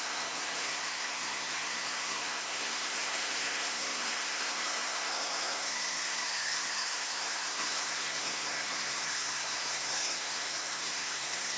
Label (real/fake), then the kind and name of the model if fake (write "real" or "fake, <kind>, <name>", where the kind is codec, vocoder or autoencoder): fake, codec, SNAC